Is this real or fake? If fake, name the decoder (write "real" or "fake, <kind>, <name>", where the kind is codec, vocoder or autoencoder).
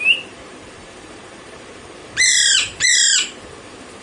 fake, vocoder, BigVGAN v2